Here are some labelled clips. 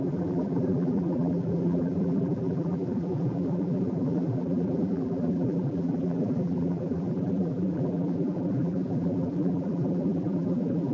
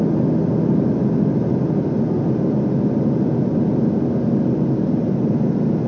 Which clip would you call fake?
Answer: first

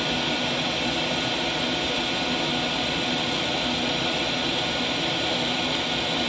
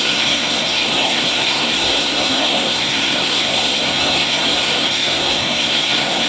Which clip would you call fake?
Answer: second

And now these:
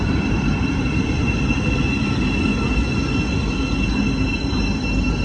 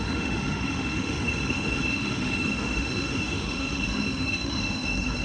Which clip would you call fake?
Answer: second